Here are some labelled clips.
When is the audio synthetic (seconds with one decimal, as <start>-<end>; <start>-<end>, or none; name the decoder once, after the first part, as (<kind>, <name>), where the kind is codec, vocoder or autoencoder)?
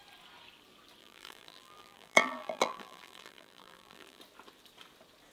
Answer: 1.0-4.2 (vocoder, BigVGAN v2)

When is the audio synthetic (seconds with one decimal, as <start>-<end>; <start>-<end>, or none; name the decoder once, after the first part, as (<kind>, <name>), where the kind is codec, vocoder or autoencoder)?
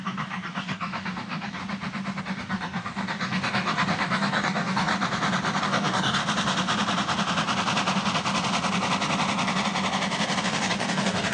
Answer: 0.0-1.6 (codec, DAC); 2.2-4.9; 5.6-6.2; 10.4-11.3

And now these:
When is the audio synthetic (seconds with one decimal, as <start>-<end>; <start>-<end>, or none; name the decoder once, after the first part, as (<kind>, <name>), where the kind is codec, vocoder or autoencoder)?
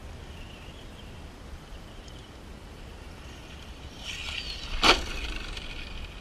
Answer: 1.2-4.4 (vocoder, BigVGAN v2)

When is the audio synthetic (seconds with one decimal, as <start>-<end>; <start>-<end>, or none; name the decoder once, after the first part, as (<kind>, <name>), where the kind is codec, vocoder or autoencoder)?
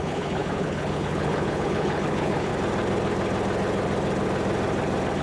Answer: 0.0-2.5 (codec, HILCodec)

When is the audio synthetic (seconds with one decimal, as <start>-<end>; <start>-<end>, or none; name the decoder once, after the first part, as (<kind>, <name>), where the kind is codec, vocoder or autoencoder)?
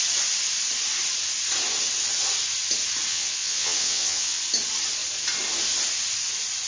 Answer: 3.1-4.4 (vocoder, WaveNeXt)